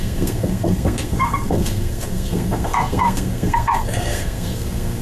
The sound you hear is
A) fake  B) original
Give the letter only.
A